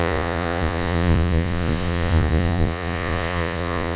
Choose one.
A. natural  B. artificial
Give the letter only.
B